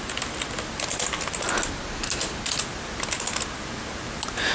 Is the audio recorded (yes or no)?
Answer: yes